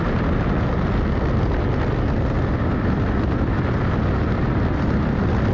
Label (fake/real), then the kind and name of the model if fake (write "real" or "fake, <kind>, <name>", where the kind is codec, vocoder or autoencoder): real